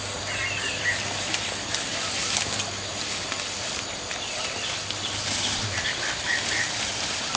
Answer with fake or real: real